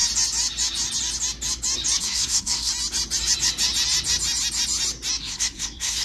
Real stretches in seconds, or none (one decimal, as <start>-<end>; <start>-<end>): 0.0-2.0; 2.7-5.2